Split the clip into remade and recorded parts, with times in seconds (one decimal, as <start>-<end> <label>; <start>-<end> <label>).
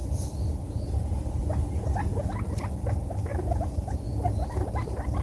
0.0-3.3 recorded; 3.3-4.1 remade; 4.1-5.2 recorded